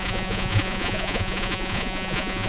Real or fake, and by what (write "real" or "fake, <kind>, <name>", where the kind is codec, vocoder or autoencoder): fake, vocoder, Vocos